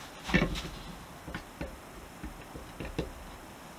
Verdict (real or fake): real